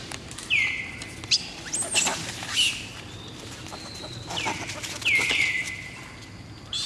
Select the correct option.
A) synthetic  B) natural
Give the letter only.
B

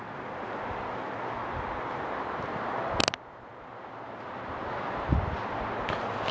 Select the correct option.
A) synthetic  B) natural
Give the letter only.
B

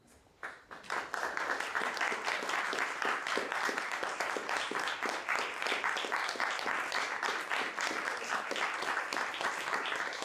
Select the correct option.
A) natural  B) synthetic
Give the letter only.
B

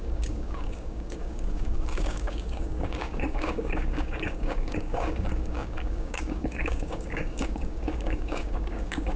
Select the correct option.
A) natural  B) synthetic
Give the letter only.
B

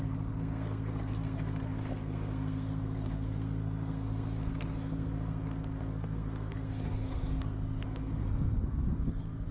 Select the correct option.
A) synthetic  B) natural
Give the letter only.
A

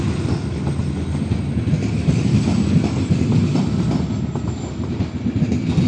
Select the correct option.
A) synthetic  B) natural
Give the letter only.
B